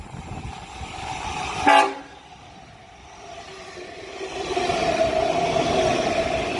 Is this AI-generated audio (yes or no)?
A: yes